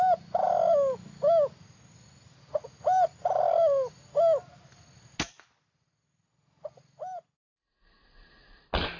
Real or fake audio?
real